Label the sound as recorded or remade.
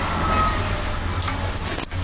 recorded